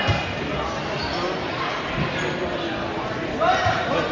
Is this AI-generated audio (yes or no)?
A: no